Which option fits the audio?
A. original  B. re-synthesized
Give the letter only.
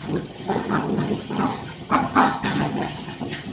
B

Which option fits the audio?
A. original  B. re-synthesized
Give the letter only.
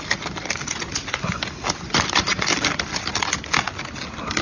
A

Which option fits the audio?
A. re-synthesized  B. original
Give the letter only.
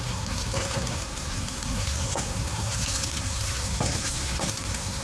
A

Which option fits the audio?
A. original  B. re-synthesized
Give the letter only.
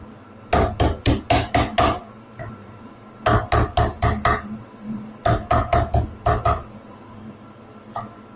A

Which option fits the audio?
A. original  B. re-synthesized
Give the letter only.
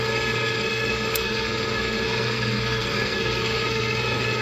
B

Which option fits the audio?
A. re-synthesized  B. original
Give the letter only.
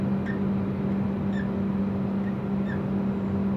B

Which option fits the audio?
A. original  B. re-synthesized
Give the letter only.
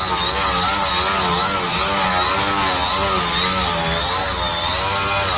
A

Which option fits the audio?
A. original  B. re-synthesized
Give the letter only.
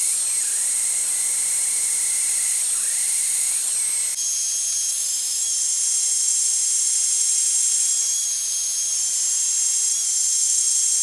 A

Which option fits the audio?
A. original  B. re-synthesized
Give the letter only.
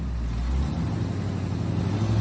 A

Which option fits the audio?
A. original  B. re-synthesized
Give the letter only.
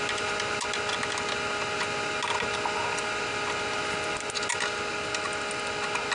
A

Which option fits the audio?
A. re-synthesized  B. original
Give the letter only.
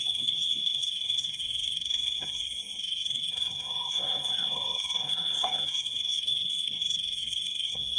A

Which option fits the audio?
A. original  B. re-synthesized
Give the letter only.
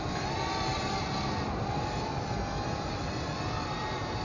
B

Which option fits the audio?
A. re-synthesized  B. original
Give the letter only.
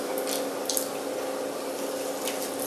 B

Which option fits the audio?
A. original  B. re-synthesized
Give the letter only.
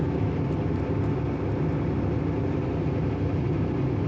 A